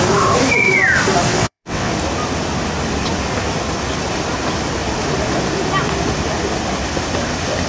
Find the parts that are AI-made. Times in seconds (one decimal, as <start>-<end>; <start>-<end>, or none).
1.3-1.9